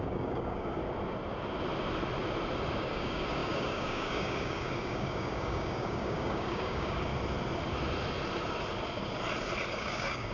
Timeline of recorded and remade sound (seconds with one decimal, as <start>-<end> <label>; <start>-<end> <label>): 0.0-0.8 remade; 0.8-2.8 recorded; 2.8-7.1 remade; 7.1-9.7 recorded; 9.7-10.3 remade